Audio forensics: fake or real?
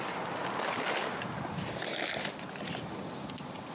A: real